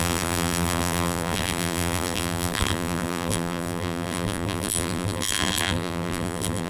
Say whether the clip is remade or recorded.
remade